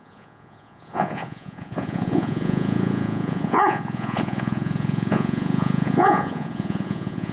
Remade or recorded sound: remade